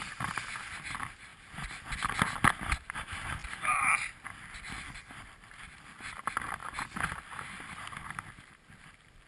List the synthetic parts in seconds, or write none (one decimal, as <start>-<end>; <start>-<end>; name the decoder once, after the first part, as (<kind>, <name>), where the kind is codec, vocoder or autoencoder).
none